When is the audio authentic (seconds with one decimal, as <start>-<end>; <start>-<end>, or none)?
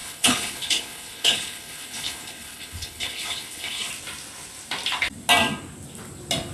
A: 3.9-6.5